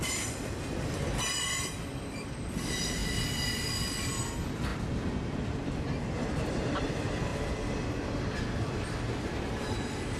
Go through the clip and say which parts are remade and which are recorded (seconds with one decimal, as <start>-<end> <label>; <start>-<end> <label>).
0.0-4.7 remade; 4.7-6.5 recorded; 6.5-7.3 remade; 7.3-8.2 recorded; 8.2-10.2 remade